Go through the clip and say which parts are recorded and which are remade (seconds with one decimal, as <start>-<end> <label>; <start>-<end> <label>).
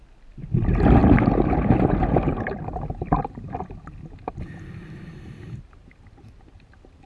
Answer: 0.0-7.1 recorded